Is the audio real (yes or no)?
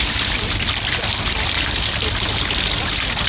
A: no